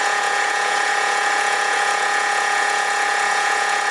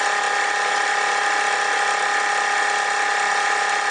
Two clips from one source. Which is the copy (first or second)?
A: first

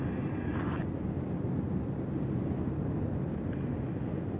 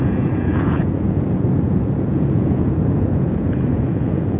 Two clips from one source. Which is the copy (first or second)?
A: second